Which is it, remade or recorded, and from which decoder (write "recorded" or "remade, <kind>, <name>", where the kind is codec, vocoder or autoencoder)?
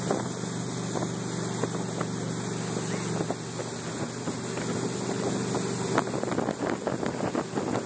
recorded